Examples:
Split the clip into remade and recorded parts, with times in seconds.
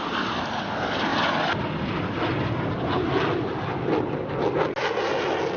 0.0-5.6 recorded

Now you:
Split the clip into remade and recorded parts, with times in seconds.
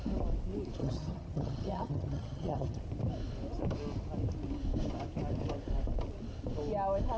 0.0-0.8 recorded; 0.8-2.8 remade; 2.8-7.2 recorded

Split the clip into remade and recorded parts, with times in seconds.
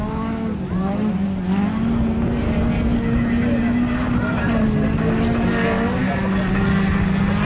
0.0-7.4 recorded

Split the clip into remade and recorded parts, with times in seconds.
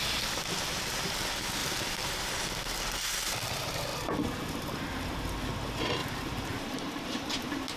0.0-1.6 recorded; 1.6-2.4 remade; 2.4-6.0 recorded; 6.0-7.3 remade; 7.3-7.8 recorded